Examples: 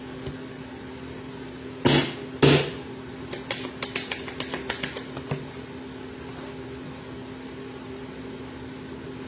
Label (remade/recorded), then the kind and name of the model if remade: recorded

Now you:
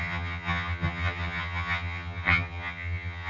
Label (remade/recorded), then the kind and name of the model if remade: remade, vocoder, HiFi-GAN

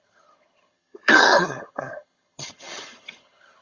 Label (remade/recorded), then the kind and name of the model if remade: remade, vocoder, HiFi-GAN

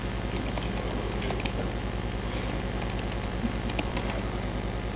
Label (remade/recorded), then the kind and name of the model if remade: recorded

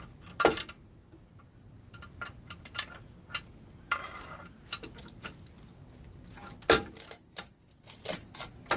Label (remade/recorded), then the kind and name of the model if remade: recorded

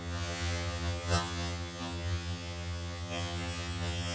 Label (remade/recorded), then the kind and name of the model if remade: remade, vocoder, HiFi-GAN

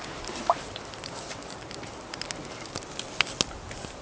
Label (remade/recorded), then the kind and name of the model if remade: recorded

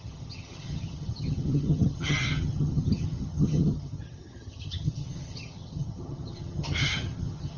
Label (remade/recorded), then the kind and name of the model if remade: remade, vocoder, HiFi-GAN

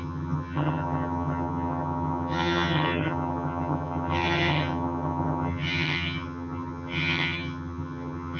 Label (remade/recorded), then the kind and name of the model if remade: remade, vocoder, HiFi-GAN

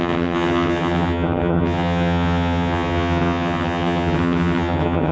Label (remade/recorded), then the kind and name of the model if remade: remade, vocoder, HiFi-GAN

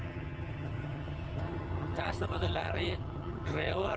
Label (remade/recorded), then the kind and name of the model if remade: remade, vocoder, HiFi-GAN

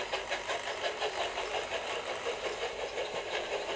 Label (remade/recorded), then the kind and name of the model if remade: recorded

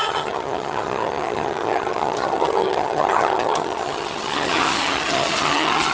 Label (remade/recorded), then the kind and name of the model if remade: remade, vocoder, HiFi-GAN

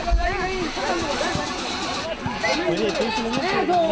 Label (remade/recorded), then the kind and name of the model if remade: recorded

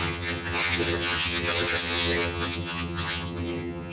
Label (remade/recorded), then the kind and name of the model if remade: remade, vocoder, HiFi-GAN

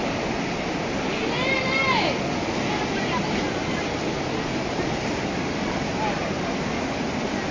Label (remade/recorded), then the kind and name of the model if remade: recorded